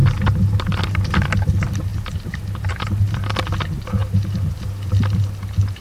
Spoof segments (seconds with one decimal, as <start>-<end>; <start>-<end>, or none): none